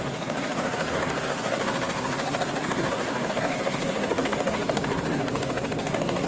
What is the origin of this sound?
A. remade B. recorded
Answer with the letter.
A